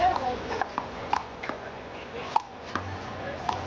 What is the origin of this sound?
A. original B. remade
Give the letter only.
B